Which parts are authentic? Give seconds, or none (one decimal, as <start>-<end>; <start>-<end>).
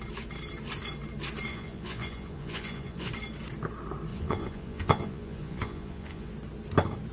0.0-1.5; 3.1-4.1; 6.3-7.1